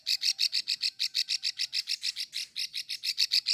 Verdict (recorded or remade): recorded